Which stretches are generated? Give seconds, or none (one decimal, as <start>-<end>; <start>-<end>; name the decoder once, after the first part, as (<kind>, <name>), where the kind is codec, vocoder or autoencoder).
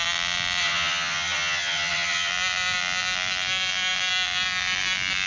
0.6-2.3 (vocoder, HiFi-GAN)